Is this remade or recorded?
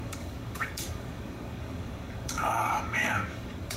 remade